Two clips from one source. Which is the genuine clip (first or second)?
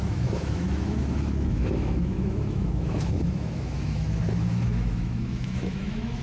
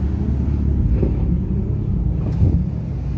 second